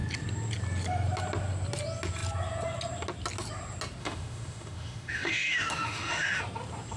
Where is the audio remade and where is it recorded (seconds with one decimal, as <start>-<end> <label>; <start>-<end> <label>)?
0.0-4.0 recorded; 4.0-6.4 remade; 6.4-7.0 recorded